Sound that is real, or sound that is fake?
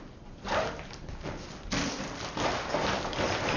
real